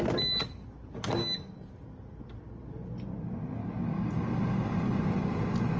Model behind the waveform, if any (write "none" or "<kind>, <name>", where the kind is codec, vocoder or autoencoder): none